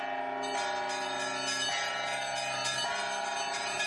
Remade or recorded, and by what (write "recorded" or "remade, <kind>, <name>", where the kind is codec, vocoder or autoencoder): recorded